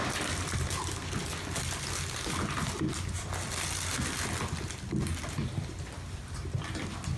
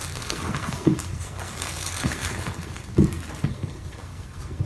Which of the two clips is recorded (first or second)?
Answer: first